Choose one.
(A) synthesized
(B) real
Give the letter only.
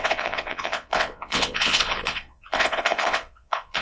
A